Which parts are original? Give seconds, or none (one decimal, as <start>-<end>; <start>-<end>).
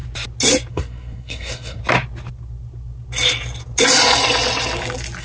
0.0-0.7; 1.8-5.2